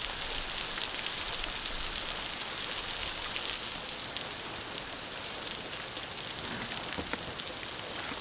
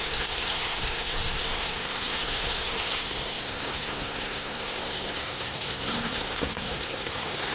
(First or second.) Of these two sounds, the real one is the first